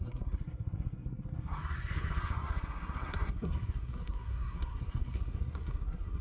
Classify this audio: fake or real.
fake